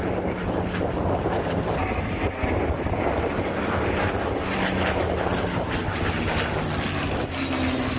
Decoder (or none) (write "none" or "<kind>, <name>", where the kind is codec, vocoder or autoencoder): none